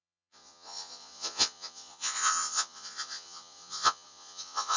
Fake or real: fake